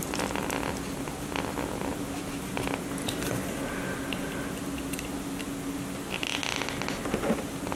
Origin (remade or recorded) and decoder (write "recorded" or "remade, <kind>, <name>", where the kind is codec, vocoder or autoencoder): recorded